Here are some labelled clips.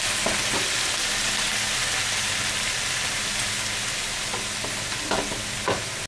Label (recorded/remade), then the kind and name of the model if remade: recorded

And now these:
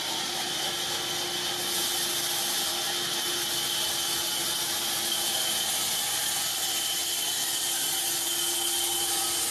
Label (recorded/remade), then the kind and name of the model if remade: recorded